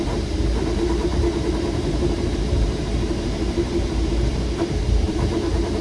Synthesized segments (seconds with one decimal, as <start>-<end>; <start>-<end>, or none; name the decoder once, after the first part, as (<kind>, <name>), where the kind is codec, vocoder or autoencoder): 0.0-5.8 (vocoder, BigVGAN v2)